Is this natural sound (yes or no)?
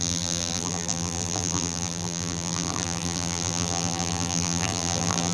no